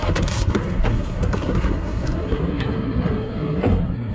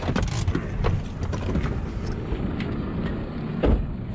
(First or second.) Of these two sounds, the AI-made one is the first